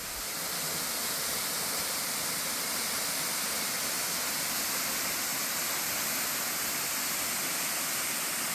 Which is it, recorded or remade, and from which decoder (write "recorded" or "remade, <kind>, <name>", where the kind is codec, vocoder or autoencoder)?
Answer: recorded